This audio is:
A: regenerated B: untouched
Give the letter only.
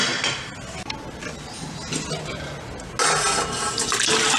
B